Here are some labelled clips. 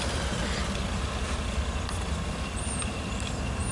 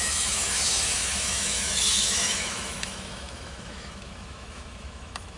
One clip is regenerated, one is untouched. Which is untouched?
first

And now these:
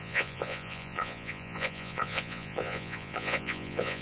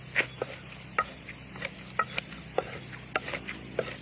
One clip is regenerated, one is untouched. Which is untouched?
second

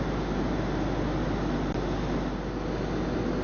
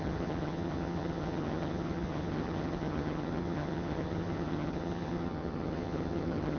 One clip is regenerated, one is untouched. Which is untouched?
first